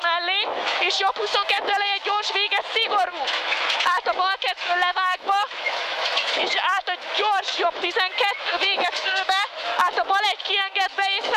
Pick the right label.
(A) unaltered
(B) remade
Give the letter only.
B